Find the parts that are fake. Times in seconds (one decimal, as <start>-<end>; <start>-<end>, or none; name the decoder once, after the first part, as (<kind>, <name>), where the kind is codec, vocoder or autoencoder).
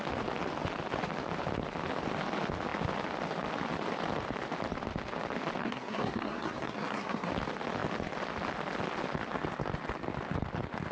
5.6-7.3 (codec, SNAC)